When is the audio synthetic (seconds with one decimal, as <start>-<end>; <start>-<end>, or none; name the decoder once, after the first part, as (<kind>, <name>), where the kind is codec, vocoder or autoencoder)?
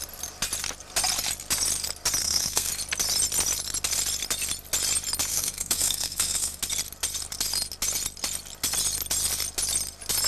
2.2-2.7 (codec, SNAC); 5.3-6.6